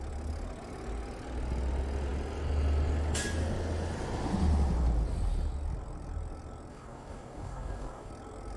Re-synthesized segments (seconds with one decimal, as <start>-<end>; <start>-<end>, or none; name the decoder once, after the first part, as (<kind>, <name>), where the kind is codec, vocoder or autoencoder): 6.7-8.1 (codec, DAC)